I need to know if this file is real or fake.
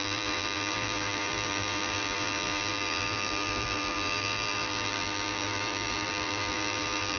fake